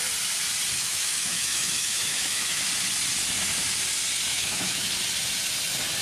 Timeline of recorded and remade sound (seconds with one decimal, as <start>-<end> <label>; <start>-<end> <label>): 0.0-0.8 recorded; 0.8-2.6 remade; 2.6-4.3 recorded; 4.3-4.9 remade; 4.9-6.0 recorded